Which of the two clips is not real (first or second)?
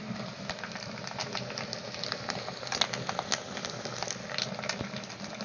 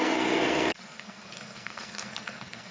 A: second